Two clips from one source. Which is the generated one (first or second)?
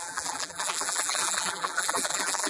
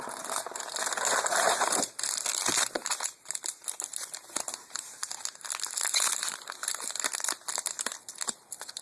first